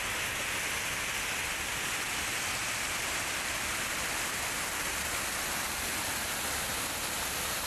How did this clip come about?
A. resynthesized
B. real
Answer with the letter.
B